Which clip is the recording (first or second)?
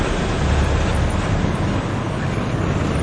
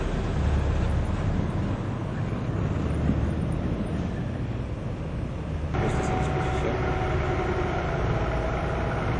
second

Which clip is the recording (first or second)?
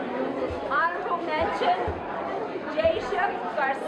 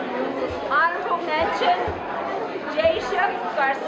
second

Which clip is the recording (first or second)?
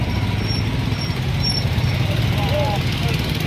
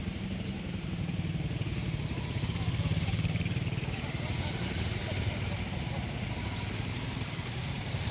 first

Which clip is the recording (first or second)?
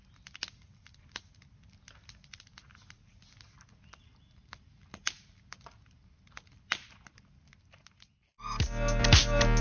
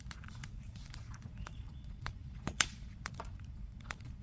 first